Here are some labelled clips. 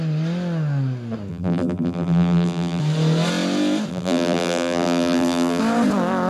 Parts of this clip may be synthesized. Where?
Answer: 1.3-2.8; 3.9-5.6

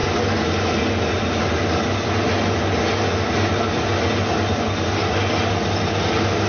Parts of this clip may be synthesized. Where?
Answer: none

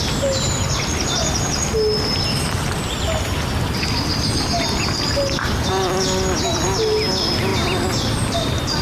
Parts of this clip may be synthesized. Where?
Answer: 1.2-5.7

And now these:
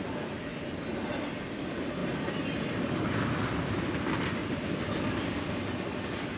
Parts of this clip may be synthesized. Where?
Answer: 0.0-0.5; 1.5-4.4; 5.8-6.4